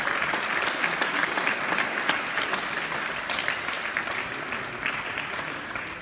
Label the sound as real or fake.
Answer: real